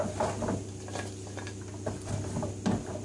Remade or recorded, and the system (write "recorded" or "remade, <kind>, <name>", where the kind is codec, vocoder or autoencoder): recorded